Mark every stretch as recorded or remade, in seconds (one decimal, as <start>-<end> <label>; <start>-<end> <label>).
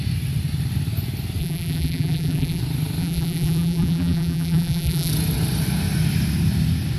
0.0-1.4 recorded; 1.4-2.6 remade; 2.6-3.0 recorded; 3.0-5.1 remade; 5.1-7.0 recorded